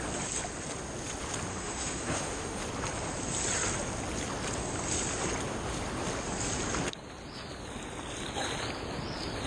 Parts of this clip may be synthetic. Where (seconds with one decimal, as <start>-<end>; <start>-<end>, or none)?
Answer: 1.5-2.6

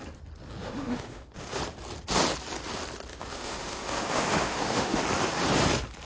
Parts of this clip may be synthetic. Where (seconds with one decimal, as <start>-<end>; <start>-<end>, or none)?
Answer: 0.6-1.6; 3.1-5.0

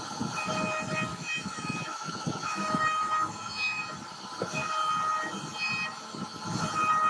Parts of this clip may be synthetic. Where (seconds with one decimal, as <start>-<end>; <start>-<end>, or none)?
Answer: 1.1-3.8

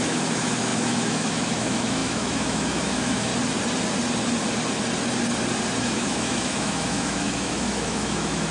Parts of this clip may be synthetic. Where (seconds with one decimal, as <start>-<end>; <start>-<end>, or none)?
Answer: 0.0-3.3; 5.8-8.5

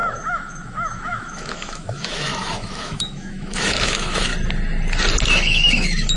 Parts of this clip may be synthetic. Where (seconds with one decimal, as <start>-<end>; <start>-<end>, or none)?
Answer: 0.0-4.3; 5.3-6.2

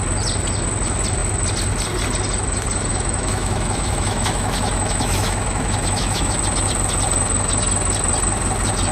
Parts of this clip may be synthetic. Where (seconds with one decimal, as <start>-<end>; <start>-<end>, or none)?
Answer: 2.9-6.4

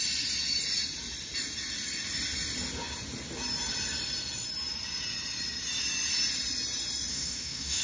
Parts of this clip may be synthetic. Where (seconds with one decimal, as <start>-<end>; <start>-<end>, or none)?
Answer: 7.1-7.8